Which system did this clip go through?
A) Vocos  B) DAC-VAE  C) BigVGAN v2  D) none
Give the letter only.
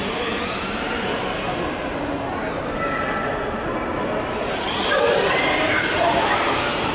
D